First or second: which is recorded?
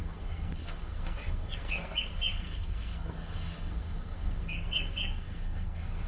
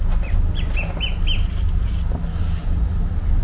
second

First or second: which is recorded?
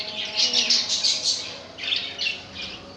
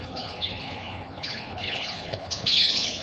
first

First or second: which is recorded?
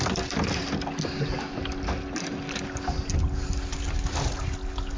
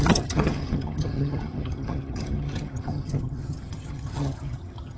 first